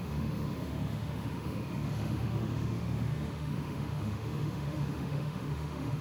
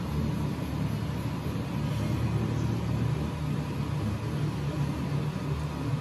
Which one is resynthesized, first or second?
first